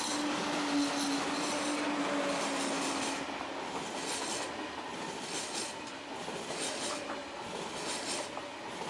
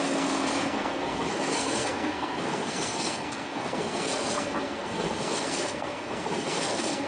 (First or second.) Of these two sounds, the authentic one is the first